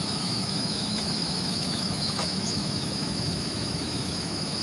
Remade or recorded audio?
remade